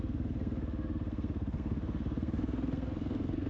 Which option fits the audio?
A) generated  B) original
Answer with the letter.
A